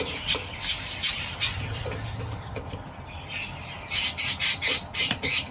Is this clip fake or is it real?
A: fake